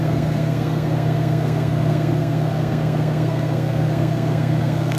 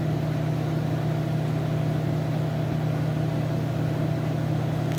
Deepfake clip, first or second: first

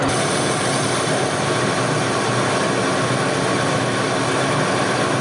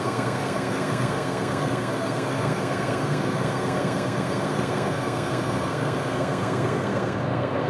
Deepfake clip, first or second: second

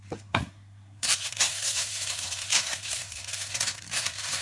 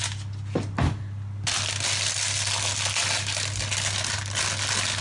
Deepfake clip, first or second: first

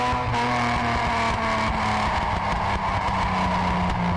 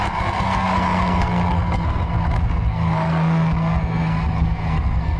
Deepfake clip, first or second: second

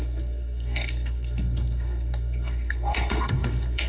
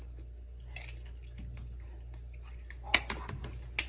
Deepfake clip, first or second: first